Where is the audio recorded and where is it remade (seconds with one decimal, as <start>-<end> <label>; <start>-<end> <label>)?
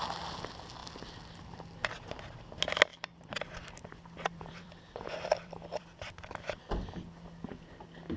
0.0-2.9 recorded; 2.9-6.6 remade; 6.6-8.2 recorded